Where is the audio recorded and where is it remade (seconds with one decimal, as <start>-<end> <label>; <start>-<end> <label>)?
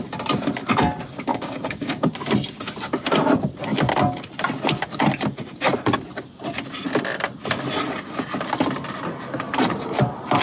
0.0-1.3 recorded; 1.3-2.1 remade; 2.1-10.4 recorded